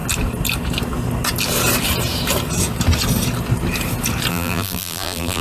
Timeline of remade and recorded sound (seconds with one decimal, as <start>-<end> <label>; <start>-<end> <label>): 0.0-4.3 recorded; 4.3-5.4 remade

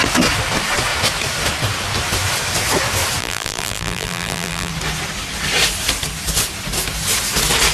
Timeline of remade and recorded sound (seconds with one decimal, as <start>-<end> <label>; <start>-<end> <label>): 0.0-3.2 recorded; 3.2-4.7 remade; 4.7-7.7 recorded

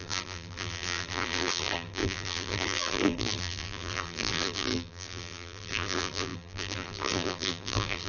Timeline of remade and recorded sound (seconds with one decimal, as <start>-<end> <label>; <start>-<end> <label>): 0.0-8.1 remade

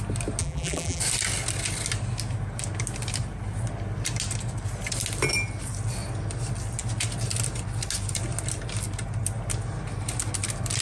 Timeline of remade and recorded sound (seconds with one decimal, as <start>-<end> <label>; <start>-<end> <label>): 0.0-0.4 recorded; 0.4-1.0 remade; 1.0-10.8 recorded

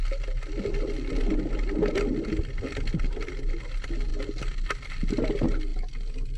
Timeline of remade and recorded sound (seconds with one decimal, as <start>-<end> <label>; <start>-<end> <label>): 0.0-6.4 recorded

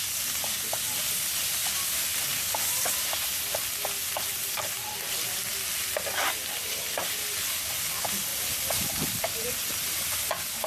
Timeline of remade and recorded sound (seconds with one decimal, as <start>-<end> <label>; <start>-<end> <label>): 0.0-1.6 recorded; 1.6-3.1 remade; 3.1-10.7 recorded

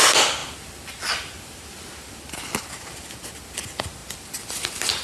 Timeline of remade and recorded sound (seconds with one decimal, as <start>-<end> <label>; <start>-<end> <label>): 0.0-5.0 recorded

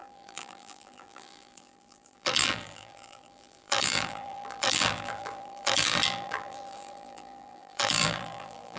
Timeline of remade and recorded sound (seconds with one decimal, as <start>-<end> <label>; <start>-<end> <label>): 0.0-8.8 remade